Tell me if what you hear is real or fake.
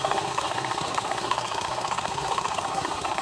fake